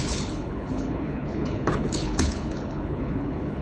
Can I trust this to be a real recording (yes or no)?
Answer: no